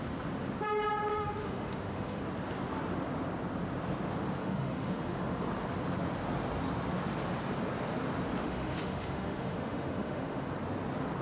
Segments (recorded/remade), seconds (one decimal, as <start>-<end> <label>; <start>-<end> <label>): 0.0-1.1 recorded; 1.1-2.2 remade; 2.2-4.4 recorded; 4.4-5.4 remade; 5.4-8.4 recorded; 8.4-10.4 remade; 10.4-11.2 recorded